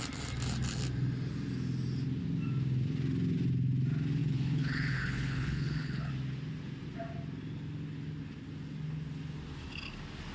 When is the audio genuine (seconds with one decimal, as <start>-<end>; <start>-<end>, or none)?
0.0-4.2; 6.1-10.3